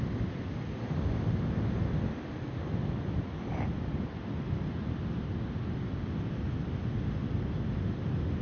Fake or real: real